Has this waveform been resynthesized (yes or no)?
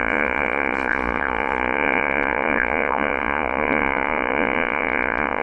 yes